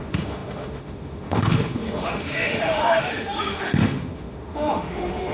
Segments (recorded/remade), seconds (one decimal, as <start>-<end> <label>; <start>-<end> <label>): 0.0-5.3 remade